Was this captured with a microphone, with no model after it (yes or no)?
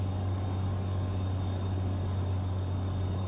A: no